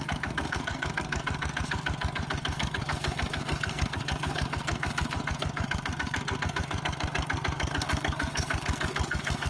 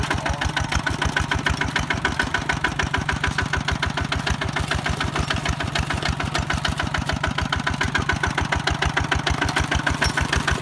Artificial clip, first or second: first